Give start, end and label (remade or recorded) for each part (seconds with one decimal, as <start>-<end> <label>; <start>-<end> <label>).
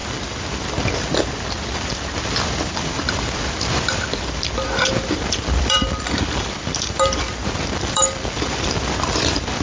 0.0-9.6 remade